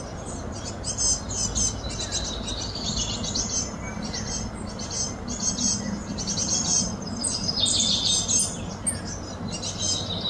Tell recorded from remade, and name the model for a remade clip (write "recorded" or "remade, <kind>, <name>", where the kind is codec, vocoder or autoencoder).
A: recorded